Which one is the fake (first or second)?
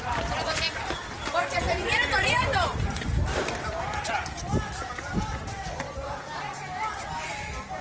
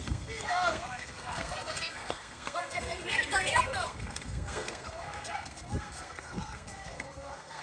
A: second